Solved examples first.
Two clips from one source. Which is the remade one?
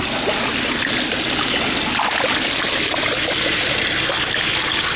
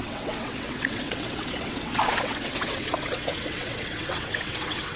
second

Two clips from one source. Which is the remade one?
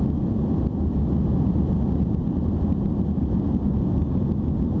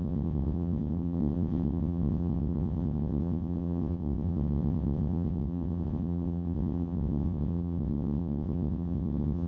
second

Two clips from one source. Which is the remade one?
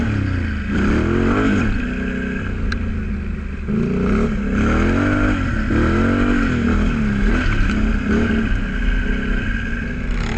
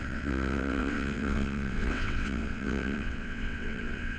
second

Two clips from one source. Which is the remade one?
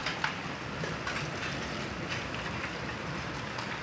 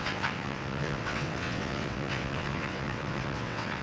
second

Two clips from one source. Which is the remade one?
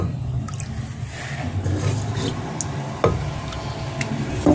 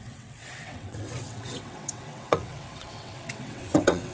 second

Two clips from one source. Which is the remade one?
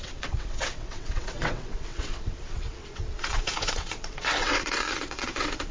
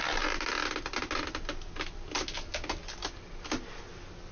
first